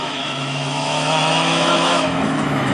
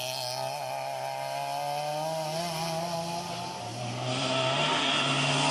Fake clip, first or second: first